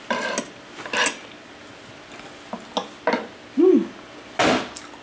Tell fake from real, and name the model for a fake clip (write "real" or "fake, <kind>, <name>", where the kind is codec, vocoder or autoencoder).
real